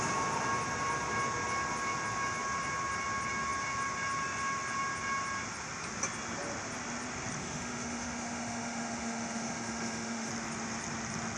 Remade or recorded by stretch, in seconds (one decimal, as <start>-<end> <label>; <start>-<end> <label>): 0.0-7.4 recorded; 7.4-10.3 remade; 10.3-11.4 recorded